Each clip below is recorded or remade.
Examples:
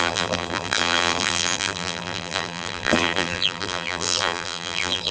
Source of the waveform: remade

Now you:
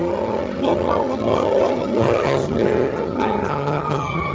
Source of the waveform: remade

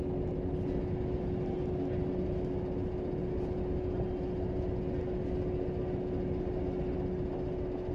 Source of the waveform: recorded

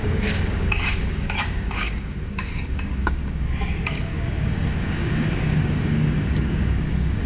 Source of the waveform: remade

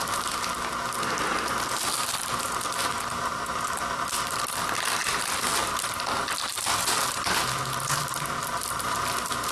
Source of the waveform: recorded